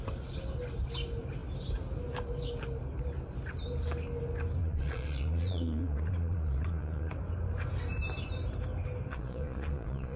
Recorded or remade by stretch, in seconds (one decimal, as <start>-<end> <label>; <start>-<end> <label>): 0.0-4.6 recorded; 4.6-7.1 remade; 7.1-9.1 recorded; 9.1-10.2 remade

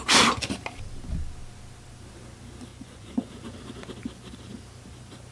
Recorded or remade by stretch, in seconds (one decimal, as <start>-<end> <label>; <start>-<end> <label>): 0.0-2.7 recorded; 2.7-3.3 remade; 3.3-5.3 recorded